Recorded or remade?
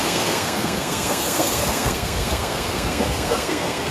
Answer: remade